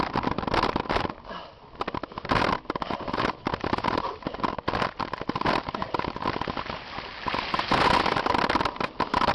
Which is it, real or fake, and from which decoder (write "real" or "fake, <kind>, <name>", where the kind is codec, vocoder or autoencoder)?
real